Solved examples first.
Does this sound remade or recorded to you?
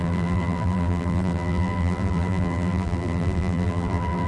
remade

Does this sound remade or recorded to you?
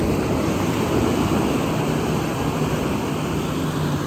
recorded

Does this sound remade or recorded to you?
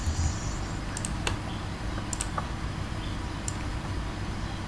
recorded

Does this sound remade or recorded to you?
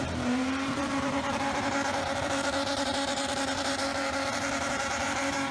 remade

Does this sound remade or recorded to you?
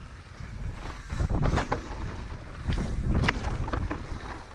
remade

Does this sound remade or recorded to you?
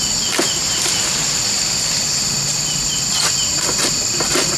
recorded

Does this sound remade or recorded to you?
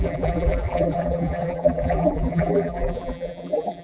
remade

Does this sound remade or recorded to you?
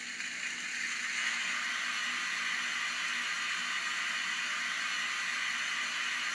recorded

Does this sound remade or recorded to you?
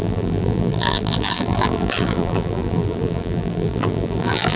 remade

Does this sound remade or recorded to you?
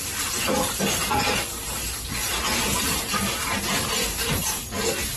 recorded